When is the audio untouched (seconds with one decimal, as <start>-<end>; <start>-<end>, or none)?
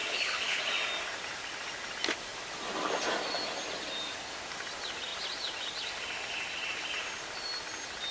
0.6-8.1